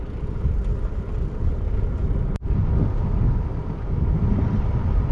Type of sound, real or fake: real